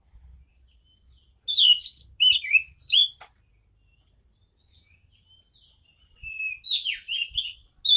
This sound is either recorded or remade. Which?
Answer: recorded